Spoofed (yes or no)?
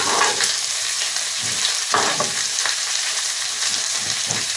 yes